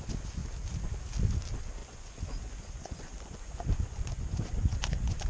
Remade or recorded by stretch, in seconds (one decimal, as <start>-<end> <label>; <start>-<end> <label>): 0.0-1.8 recorded; 1.8-5.3 remade